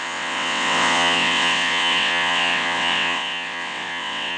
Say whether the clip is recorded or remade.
remade